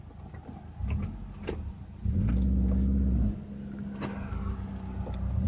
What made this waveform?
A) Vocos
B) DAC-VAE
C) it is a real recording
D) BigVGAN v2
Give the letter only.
C